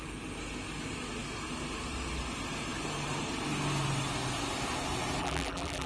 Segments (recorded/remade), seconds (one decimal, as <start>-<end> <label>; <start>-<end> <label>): 0.0-5.2 recorded; 5.2-5.9 remade